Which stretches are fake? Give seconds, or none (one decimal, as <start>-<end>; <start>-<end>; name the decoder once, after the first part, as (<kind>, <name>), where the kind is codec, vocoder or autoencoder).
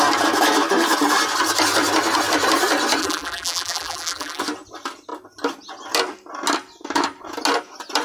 3.0-4.4 (vocoder, BigVGAN v2)